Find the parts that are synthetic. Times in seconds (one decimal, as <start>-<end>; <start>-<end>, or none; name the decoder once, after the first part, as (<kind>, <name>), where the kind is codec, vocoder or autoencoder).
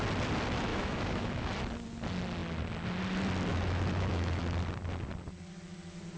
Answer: 0.7-1.5 (autoencoder, DAC-VAE); 3.5-4.4